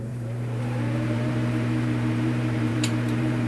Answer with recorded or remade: remade